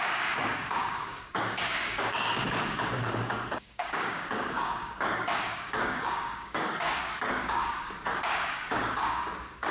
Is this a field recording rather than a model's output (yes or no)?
no